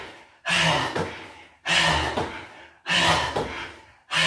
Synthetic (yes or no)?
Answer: no